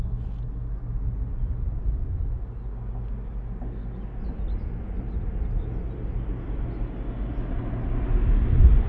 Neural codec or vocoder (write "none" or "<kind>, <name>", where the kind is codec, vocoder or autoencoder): none